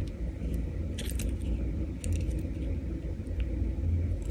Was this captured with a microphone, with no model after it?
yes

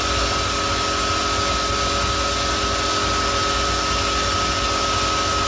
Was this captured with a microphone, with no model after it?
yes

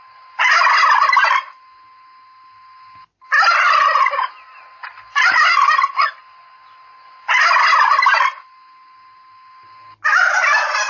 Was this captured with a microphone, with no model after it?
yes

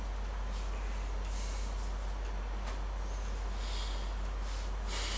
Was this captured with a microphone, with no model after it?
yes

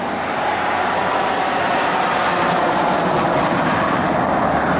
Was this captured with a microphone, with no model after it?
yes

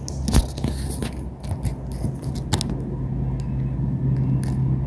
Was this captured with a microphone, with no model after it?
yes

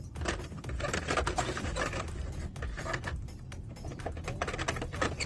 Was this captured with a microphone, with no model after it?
no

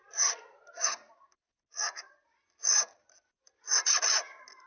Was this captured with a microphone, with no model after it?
yes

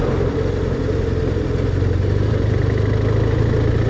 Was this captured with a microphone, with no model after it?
yes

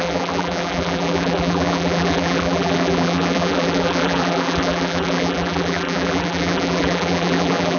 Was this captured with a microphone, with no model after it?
no